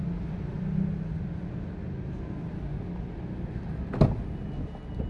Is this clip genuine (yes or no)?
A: yes